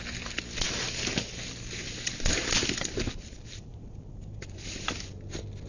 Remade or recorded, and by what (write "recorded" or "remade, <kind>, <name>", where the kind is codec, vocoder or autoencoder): recorded